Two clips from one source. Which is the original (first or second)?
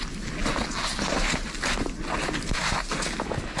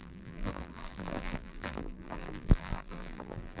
first